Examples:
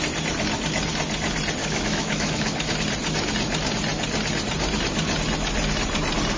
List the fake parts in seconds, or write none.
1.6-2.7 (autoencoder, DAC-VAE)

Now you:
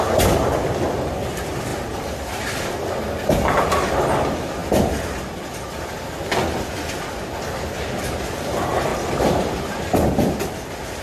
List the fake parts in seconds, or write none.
none